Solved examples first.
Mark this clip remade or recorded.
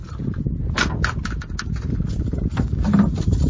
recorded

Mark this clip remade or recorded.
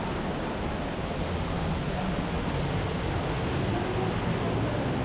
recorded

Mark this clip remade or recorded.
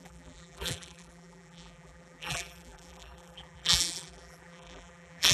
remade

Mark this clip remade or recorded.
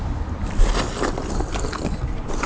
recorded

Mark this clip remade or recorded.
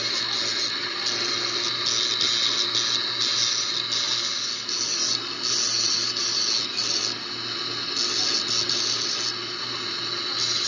recorded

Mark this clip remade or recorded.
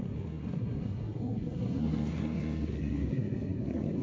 remade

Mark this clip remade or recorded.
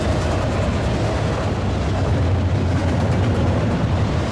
recorded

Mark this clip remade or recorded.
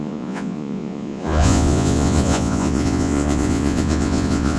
remade